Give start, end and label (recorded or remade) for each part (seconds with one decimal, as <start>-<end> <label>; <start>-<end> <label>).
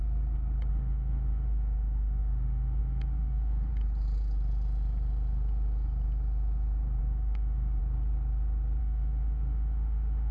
0.0-0.7 recorded; 0.7-3.7 remade; 3.7-7.0 recorded; 7.0-7.8 remade; 7.8-8.8 recorded; 8.8-10.3 remade